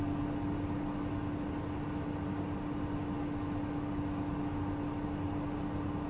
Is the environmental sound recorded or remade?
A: recorded